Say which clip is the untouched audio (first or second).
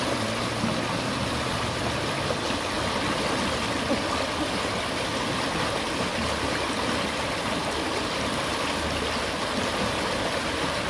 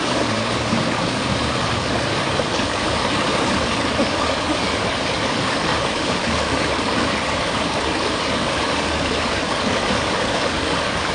first